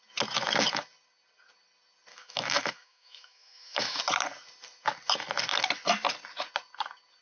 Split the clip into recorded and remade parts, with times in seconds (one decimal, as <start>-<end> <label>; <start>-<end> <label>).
0.0-2.1 recorded; 2.1-4.0 remade; 4.0-7.2 recorded